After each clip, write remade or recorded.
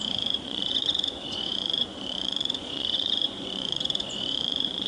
remade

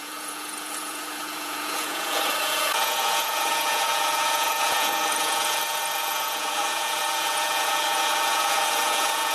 remade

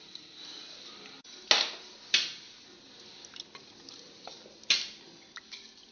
recorded